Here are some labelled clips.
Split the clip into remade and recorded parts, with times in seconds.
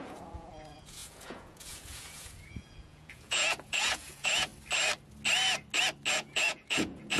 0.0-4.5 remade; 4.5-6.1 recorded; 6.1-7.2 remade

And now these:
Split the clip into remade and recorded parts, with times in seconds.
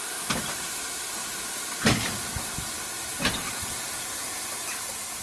0.0-5.2 recorded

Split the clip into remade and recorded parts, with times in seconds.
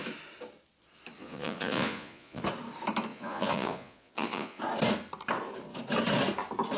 0.0-1.2 recorded; 1.2-2.4 remade; 2.4-3.1 recorded; 3.1-4.6 remade; 4.6-6.8 recorded